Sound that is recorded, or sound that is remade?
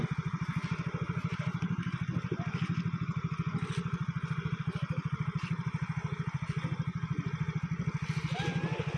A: recorded